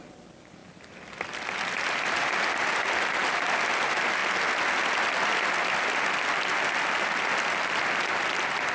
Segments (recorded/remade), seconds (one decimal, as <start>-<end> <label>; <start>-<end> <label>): 0.0-8.7 recorded